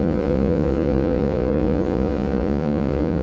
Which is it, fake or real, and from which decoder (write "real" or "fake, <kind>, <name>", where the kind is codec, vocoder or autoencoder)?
fake, vocoder, Vocos